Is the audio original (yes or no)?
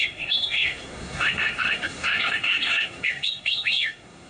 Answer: no